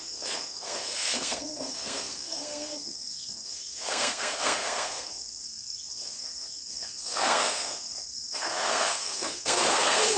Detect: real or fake fake